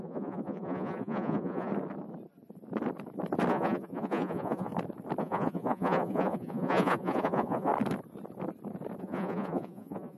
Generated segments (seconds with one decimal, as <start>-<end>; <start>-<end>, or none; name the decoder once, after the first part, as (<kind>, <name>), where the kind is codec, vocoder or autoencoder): 0.0-1.7 (vocoder, Vocos); 3.5-4.7; 5.2-7.7; 9.0-10.2